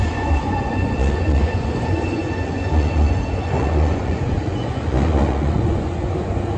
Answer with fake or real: fake